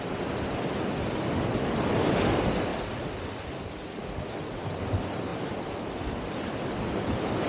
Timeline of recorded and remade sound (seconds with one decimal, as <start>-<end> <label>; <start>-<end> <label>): 0.0-7.5 recorded

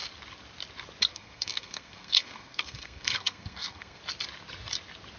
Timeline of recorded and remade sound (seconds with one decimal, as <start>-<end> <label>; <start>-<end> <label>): 0.0-1.1 recorded; 1.1-4.0 remade; 4.0-5.2 recorded

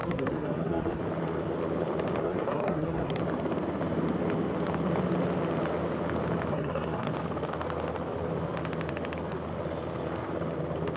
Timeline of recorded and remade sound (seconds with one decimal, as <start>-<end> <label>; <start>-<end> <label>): 0.0-1.0 remade; 1.0-2.2 recorded; 2.2-3.2 remade; 3.2-6.5 recorded; 6.5-7.1 remade; 7.1-11.0 recorded

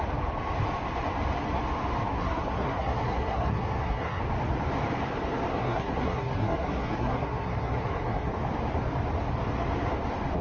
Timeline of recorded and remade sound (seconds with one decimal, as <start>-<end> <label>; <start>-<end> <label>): 0.0-2.1 recorded; 2.1-4.2 remade; 4.2-5.5 recorded; 5.5-8.3 remade; 8.3-10.4 recorded

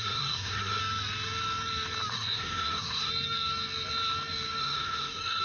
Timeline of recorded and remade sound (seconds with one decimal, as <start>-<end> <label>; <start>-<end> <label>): 0.0-0.8 remade; 0.8-2.1 recorded; 2.1-3.1 remade; 3.1-4.6 recorded; 4.6-5.4 remade

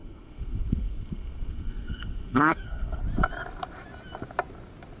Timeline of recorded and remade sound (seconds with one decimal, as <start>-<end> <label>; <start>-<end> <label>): 0.0-3.0 remade; 3.0-5.0 recorded

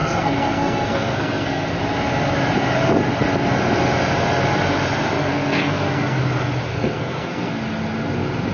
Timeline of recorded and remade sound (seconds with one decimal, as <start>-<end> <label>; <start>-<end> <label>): 0.0-1.8 remade; 1.8-5.3 recorded; 5.3-6.2 remade; 6.2-6.7 recorded; 6.7-7.5 remade; 7.5-8.5 recorded